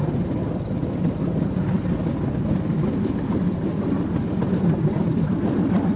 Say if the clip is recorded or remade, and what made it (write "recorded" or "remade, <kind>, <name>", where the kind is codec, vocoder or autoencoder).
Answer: recorded